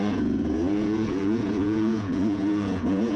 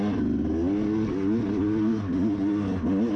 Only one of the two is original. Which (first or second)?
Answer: second